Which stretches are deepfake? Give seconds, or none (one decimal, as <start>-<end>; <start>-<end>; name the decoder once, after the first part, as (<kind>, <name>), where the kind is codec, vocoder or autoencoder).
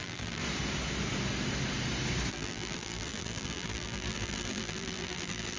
0.0-0.4 (vocoder, BigVGAN v2); 2.3-5.6